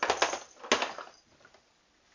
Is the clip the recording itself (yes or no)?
yes